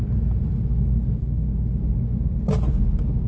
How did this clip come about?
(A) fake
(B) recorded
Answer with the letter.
B